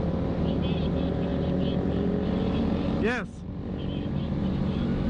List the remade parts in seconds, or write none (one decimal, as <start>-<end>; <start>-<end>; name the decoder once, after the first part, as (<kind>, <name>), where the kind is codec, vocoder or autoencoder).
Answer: none